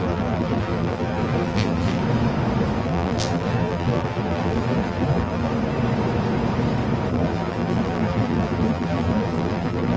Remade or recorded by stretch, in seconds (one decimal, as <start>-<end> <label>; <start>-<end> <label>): 0.0-2.0 remade; 2.0-2.8 recorded; 2.8-5.5 remade; 5.5-7.1 recorded; 7.1-10.0 remade